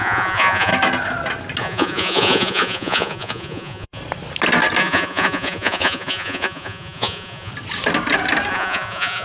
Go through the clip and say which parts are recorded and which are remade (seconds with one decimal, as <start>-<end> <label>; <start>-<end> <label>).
0.0-0.7 remade; 0.7-1.6 recorded; 1.6-4.0 remade; 4.0-4.8 recorded; 4.8-7.5 remade; 7.5-8.5 recorded; 8.5-9.2 remade